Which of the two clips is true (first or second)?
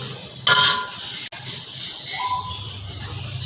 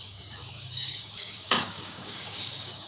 first